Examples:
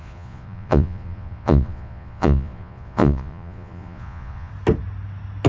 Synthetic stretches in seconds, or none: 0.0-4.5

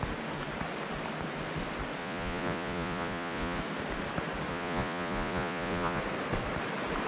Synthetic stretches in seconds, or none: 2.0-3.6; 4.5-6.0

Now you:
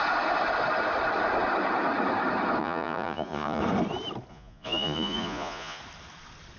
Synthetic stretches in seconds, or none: 2.6-3.6; 4.3-5.8

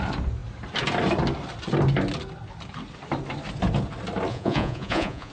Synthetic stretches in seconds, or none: 4.3-5.3

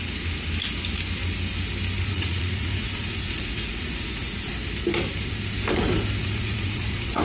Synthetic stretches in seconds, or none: 2.1-4.5; 6.2-7.2